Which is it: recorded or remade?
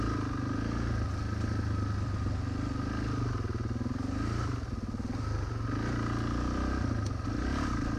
recorded